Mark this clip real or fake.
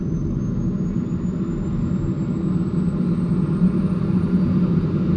real